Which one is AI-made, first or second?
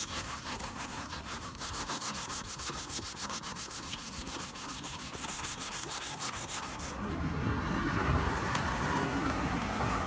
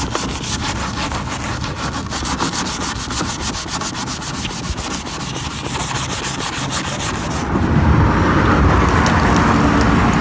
first